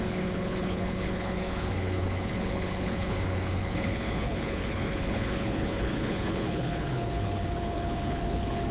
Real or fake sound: fake